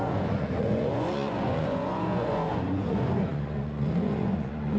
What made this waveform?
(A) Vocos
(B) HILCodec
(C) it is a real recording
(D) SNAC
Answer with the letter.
A